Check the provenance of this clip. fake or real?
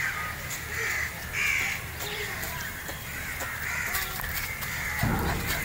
real